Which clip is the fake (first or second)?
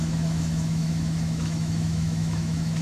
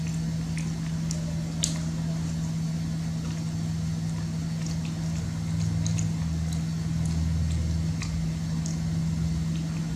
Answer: first